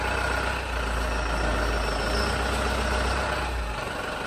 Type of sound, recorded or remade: recorded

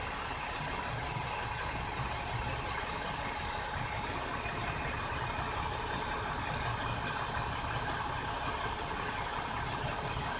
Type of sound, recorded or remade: recorded